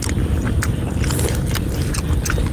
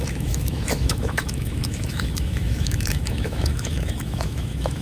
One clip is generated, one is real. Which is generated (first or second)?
second